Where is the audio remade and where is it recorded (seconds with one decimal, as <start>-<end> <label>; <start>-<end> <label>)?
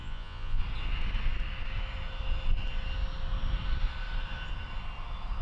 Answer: 0.0-0.6 remade; 0.6-5.4 recorded